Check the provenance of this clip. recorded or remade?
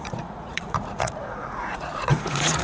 remade